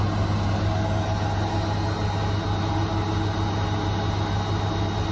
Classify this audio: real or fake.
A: real